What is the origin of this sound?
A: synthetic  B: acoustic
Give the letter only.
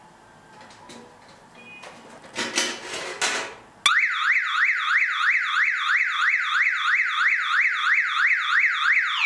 B